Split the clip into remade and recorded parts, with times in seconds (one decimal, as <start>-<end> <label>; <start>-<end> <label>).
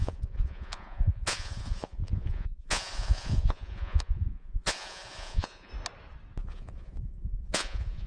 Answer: 0.0-5.7 remade; 5.7-6.4 recorded; 6.4-8.1 remade